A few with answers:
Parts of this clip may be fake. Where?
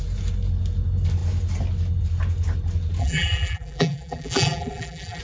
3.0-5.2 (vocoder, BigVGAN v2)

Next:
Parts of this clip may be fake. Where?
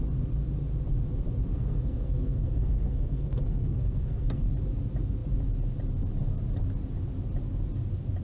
1.5-4.5 (codec, SNAC)